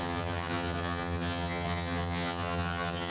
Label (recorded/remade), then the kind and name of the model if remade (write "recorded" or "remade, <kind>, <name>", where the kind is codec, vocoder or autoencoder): remade, vocoder, HiFi-GAN